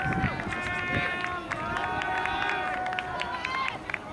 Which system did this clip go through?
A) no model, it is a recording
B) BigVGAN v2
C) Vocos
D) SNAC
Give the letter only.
A